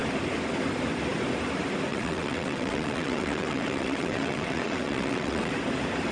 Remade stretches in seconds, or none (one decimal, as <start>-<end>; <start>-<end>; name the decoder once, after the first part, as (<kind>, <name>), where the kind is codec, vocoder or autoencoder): 1.9-5.5 (vocoder, WaveNeXt)